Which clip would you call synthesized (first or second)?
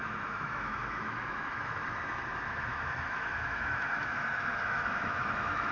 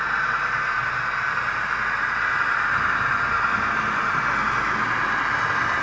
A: first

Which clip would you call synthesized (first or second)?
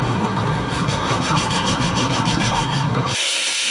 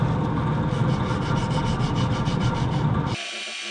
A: first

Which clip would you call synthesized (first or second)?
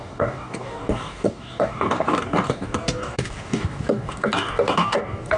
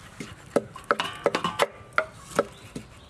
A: first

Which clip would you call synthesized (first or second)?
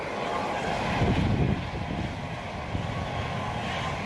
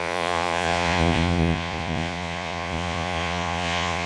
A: second